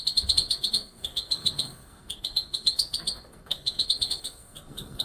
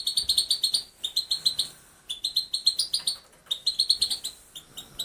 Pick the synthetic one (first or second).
first